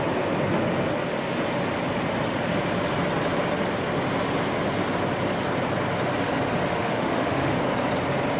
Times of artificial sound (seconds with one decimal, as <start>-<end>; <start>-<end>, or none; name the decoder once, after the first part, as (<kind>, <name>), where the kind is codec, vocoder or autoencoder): 6.7-7.6 (autoencoder, DAC-VAE)